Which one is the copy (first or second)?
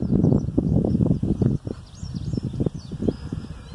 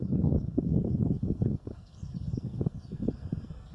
second